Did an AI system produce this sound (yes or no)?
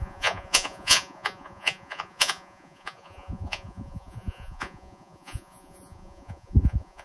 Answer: yes